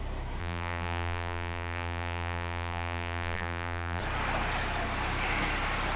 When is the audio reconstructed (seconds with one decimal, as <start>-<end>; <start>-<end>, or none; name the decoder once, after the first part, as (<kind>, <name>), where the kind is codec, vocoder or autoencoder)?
0.4-4.0 (vocoder, BigVGAN v2)